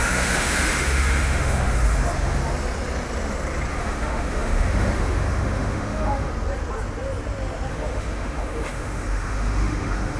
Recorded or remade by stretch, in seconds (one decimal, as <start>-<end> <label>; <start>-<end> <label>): 0.0-2.4 remade; 2.4-3.7 recorded; 3.7-6.3 remade; 6.3-7.7 recorded; 7.7-10.2 remade